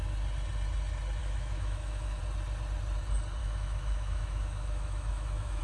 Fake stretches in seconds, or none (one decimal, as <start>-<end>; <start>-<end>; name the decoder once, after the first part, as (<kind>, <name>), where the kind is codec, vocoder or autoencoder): 1.2-2.2 (autoencoder, DAC-VAE); 3.4-5.6